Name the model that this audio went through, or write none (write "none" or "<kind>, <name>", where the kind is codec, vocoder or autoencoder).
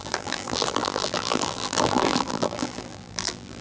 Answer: vocoder, BigVGAN v2